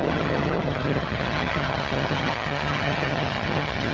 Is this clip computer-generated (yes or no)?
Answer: yes